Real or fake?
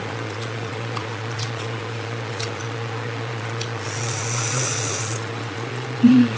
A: fake